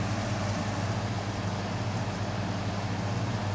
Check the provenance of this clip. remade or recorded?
recorded